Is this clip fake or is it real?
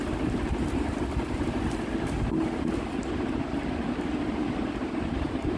real